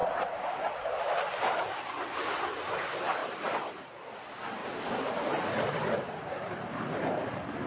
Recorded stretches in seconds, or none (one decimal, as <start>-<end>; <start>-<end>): 0.7-3.2; 4.1-4.6; 7.3-7.7